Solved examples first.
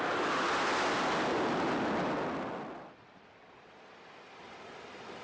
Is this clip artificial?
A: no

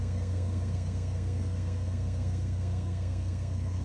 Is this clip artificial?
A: yes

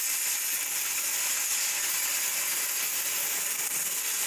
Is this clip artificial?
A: no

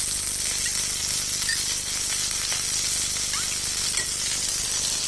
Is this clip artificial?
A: no